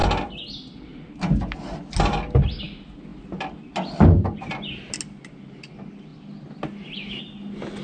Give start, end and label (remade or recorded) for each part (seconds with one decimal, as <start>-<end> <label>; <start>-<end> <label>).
0.0-7.8 recorded

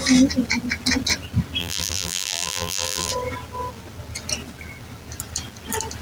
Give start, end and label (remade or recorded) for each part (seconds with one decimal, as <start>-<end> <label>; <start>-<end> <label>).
0.0-1.6 recorded; 1.6-3.1 remade; 3.1-6.0 recorded

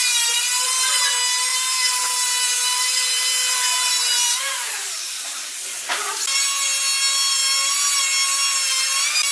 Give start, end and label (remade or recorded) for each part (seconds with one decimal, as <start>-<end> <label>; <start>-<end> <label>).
0.0-1.5 recorded; 1.5-5.0 remade; 5.0-9.3 recorded

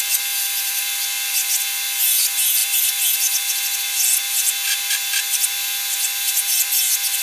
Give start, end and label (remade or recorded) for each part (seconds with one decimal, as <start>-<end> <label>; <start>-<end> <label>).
0.0-7.2 recorded